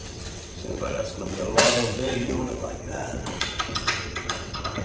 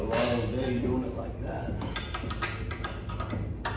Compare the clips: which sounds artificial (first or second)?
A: first